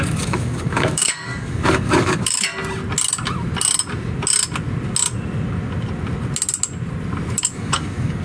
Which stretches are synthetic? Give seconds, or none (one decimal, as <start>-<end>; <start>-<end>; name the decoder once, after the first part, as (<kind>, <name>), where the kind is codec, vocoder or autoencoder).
0.0-2.5 (codec, DAC); 7.4-8.2